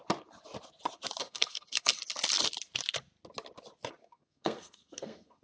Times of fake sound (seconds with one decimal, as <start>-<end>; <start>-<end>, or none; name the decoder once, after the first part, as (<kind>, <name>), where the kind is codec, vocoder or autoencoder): 1.2-2.0 (codec, SNAC); 4.0-5.4